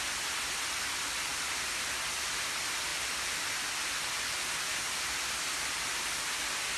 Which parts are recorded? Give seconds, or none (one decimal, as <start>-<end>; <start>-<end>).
0.0-6.8